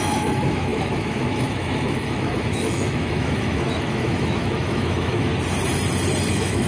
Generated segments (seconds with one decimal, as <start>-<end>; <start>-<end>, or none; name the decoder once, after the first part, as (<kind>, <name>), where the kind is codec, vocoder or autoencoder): 0.0-5.3 (autoencoder, DAC-VAE); 6.3-6.7